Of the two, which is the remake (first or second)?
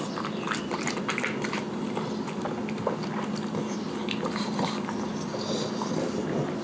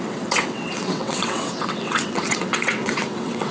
second